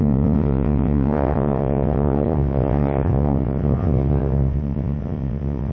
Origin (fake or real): fake